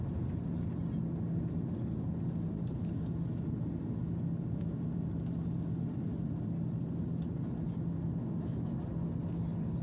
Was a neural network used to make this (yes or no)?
no